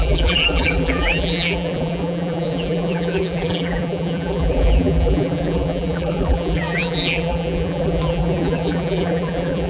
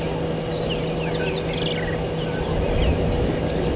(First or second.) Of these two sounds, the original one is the second